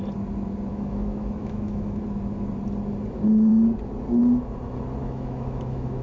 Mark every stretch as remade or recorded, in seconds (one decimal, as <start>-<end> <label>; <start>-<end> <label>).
0.0-0.7 recorded; 0.7-2.0 remade; 2.0-5.0 recorded; 5.0-6.0 remade